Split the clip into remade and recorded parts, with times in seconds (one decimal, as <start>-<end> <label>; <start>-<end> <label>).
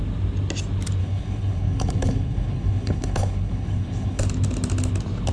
0.0-1.0 recorded; 1.0-4.2 remade; 4.2-5.3 recorded